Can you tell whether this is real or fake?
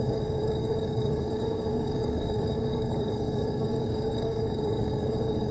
fake